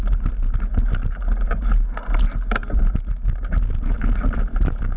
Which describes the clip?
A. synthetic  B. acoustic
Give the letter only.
B